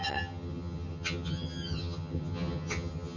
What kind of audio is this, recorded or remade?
remade